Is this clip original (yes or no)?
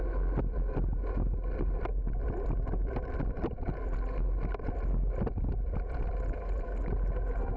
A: yes